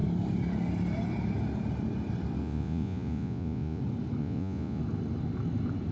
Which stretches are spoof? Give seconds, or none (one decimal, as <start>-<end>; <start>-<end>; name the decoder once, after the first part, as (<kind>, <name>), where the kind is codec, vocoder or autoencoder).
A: 2.4-3.8 (vocoder, Vocos); 4.2-4.8